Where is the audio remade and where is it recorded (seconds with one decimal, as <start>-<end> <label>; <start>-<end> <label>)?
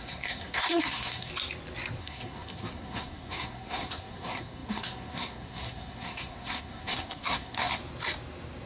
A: 0.0-1.3 remade; 1.3-2.0 recorded; 2.0-7.8 remade; 7.8-8.7 recorded